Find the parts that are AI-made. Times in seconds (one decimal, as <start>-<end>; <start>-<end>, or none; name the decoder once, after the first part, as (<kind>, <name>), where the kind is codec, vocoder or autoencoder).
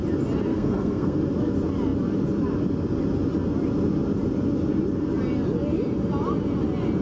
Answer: 0.5-1.2 (codec, SNAC)